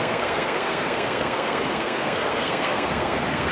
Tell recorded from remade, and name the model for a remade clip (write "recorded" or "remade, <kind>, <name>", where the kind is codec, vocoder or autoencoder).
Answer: remade, codec, SNAC